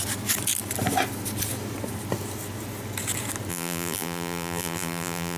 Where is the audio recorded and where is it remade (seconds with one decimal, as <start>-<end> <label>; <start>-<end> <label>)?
0.0-3.5 recorded; 3.5-5.4 remade